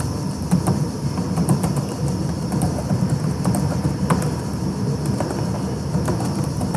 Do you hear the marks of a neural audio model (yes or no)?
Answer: yes